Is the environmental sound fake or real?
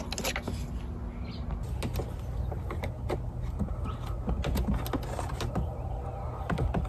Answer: real